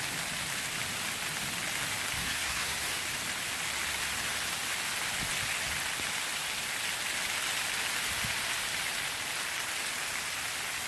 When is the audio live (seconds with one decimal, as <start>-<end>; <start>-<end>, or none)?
0.0-2.2; 3.0-10.9